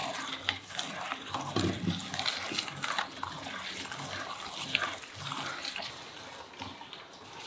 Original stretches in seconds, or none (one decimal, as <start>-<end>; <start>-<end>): 0.0-7.5

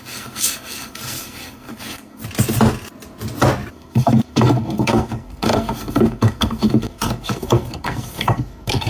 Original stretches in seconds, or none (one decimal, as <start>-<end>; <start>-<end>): 2.2-3.7

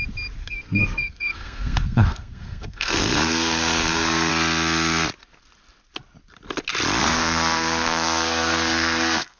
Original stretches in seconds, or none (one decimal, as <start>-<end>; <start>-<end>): 0.0-0.4; 4.3-7.0

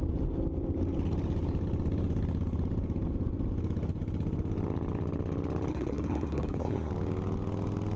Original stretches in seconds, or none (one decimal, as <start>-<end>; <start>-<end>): 0.0-5.7; 6.9-8.0

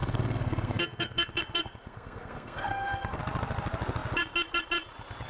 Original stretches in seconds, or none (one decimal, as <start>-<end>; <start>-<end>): 3.2-5.3